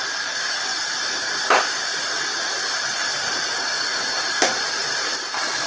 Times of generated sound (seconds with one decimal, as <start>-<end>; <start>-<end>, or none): 0.7-1.4; 1.9-5.3